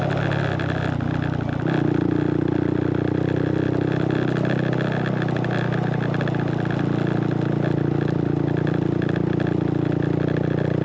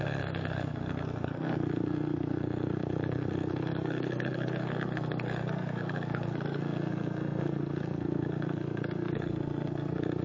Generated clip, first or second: second